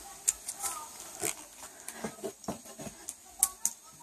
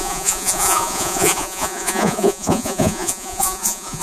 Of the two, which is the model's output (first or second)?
second